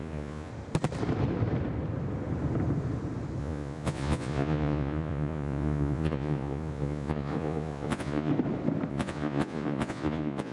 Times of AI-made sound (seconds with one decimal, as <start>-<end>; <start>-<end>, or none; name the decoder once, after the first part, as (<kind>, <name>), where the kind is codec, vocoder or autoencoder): 0.0-0.5 (vocoder, Vocos); 3.4-8.3; 8.9-10.5